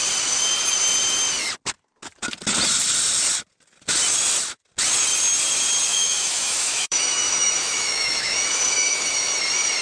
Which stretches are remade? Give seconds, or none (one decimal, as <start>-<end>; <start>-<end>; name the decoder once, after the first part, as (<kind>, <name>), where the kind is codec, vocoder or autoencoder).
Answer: 5.9-9.4 (autoencoder, DAC-VAE)